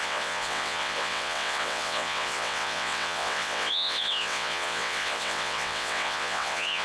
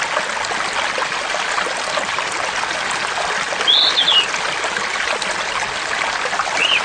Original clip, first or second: second